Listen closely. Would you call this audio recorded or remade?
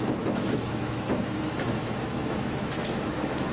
remade